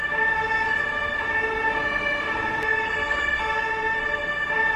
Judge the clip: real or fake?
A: real